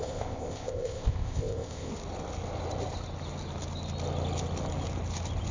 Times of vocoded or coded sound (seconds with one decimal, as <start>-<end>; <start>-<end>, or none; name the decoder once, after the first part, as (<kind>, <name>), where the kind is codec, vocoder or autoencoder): 0.0-1.9 (codec, ZipCodec)